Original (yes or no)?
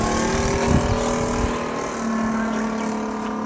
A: yes